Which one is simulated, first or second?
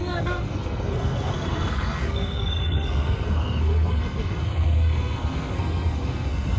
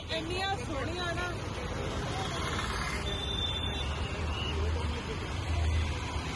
first